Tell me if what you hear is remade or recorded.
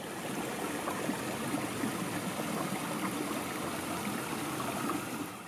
recorded